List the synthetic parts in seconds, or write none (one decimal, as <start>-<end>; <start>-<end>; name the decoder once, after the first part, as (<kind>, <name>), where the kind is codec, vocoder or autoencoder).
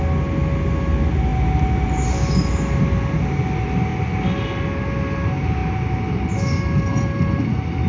none